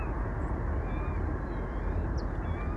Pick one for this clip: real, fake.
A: real